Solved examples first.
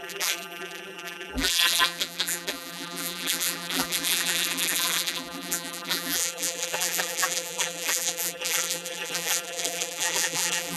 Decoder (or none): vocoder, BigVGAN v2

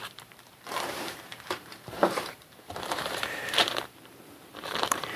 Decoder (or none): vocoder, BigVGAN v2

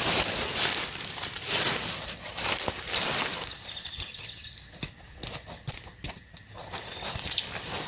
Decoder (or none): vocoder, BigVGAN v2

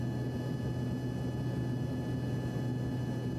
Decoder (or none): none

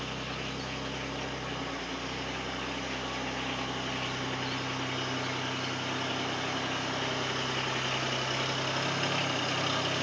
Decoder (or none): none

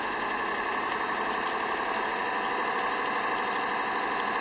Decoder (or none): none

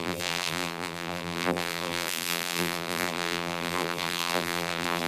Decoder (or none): vocoder, BigVGAN v2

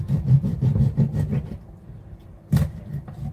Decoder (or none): none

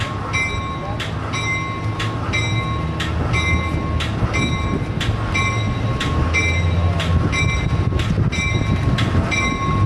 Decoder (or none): none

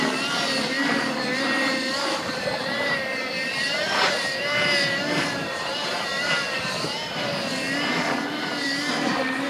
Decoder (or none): vocoder, BigVGAN v2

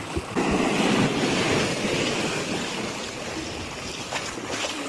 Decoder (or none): none